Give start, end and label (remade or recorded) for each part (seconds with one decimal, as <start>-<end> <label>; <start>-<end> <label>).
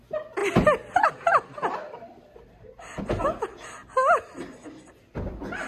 0.0-5.7 recorded